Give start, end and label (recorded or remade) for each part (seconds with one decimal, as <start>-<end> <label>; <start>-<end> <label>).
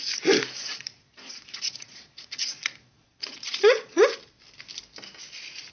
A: 0.0-0.6 recorded; 0.6-4.0 remade; 4.0-5.7 recorded